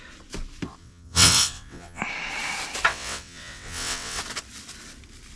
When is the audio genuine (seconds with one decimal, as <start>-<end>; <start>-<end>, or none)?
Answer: 0.0-0.8; 2.0-2.9; 4.2-5.4